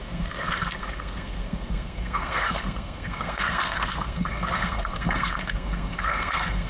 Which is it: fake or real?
fake